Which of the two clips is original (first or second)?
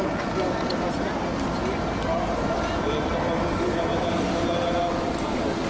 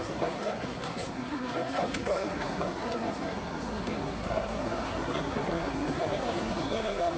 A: first